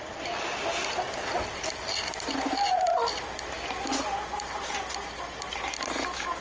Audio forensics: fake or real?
real